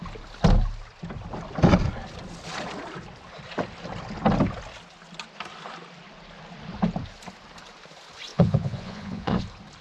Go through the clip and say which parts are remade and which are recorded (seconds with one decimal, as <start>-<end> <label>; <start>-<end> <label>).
0.0-8.3 recorded; 8.3-9.4 remade; 9.4-9.8 recorded